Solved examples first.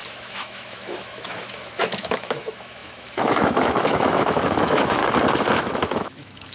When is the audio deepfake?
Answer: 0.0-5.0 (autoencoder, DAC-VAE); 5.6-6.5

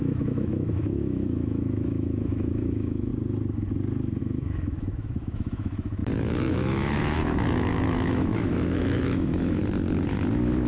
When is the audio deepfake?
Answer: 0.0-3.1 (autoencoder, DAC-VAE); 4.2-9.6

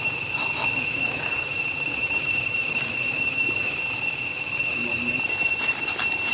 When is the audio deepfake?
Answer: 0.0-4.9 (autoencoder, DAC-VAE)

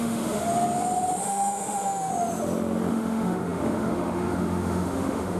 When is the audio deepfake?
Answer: 0.0-0.5 (autoencoder, DAC-VAE); 1.2-2.1; 2.9-5.4